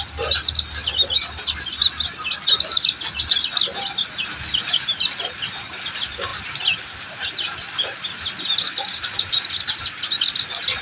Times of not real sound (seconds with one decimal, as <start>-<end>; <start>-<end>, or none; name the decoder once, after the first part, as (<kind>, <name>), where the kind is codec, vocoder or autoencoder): none